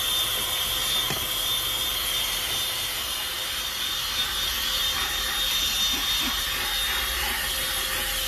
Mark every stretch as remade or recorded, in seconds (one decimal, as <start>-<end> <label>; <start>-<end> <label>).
0.0-8.3 recorded